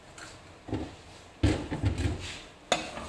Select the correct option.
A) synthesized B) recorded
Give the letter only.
B